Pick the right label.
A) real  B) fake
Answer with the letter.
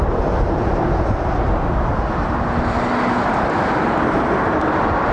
A